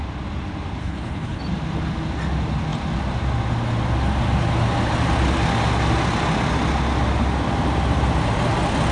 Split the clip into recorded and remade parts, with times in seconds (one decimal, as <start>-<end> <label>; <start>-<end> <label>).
0.0-0.8 recorded; 0.8-1.4 remade; 1.4-8.9 recorded